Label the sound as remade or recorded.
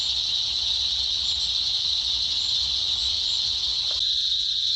recorded